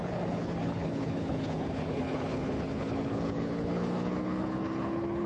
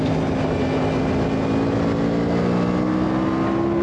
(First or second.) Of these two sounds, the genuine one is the second